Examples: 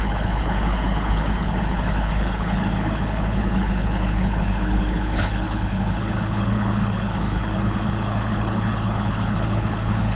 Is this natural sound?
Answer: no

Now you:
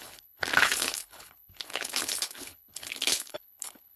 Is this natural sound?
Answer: no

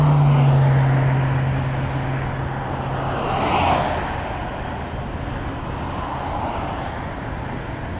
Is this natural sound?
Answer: yes